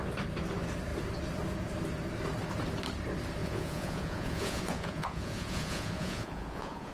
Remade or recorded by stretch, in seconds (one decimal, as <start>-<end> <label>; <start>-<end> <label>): 0.0-3.4 recorded; 3.4-6.9 remade